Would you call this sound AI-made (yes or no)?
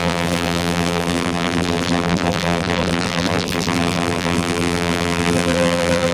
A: yes